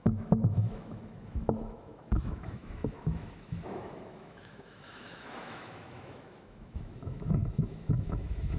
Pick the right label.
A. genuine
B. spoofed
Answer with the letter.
B